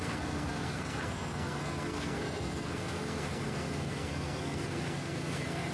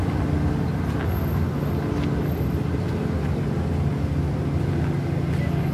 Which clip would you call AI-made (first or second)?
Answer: first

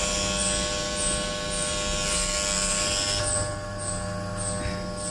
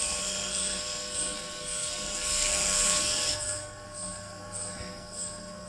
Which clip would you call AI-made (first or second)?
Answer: second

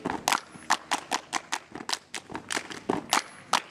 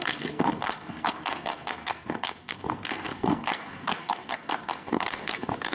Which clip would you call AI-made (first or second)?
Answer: second